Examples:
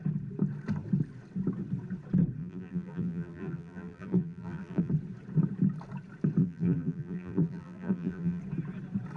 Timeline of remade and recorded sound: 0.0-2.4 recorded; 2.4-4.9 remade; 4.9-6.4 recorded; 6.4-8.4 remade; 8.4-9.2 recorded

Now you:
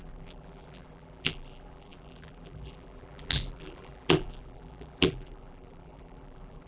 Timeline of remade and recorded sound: 0.0-6.7 remade

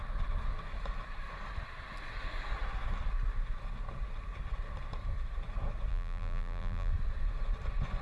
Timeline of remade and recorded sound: 0.0-5.9 recorded; 5.9-6.9 remade; 6.9-8.0 recorded

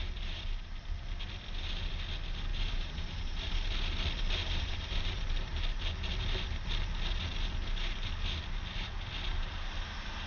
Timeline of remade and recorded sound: 0.0-2.5 recorded; 2.5-3.5 remade; 3.5-4.4 recorded; 4.4-5.3 remade; 5.3-10.3 recorded

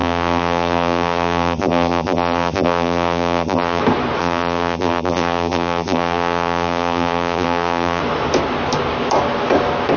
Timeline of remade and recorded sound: 0.0-3.8 remade; 3.8-4.2 recorded; 4.2-8.0 remade; 8.0-10.0 recorded